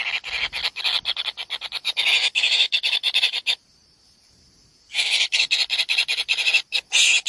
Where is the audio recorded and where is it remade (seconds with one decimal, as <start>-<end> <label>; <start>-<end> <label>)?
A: 0.0-2.2 recorded; 2.2-6.5 remade; 6.5-7.3 recorded

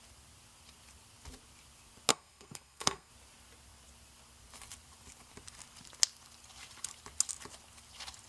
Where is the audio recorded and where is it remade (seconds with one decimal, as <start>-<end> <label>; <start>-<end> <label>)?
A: 0.0-2.1 recorded; 2.1-3.1 remade; 3.1-8.3 recorded

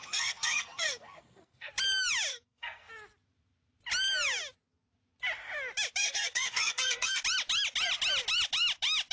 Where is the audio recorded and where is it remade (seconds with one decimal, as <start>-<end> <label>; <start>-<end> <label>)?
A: 0.0-1.7 remade; 1.7-2.3 recorded; 2.3-2.9 remade; 2.9-6.0 recorded; 6.0-7.2 remade; 7.2-9.1 recorded

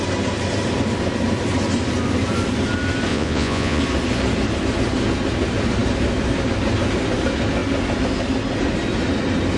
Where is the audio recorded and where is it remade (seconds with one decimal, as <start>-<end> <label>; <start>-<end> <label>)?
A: 0.0-3.1 recorded; 3.1-3.8 remade; 3.8-9.6 recorded

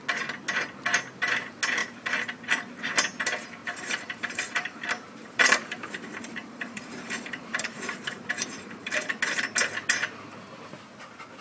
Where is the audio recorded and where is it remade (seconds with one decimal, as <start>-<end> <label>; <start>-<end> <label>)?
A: 0.0-3.6 recorded; 3.6-4.8 remade; 4.8-5.2 recorded; 5.2-9.2 remade; 9.2-11.4 recorded

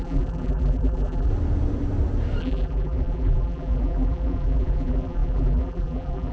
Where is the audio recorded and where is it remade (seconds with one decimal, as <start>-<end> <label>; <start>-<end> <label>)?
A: 0.0-1.3 remade; 1.3-2.4 recorded; 2.4-6.3 remade

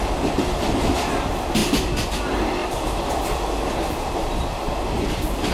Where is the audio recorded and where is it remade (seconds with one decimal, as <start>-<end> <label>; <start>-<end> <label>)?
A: 0.0-1.6 recorded; 1.6-2.2 remade; 2.2-2.6 recorded; 2.6-3.4 remade; 3.4-5.5 recorded

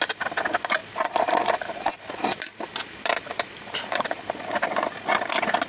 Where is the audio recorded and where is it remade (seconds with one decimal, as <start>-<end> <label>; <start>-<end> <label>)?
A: 0.0-0.8 recorded; 0.8-4.2 remade; 4.2-5.7 recorded